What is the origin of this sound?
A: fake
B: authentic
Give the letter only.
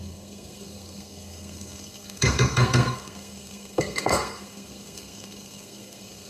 A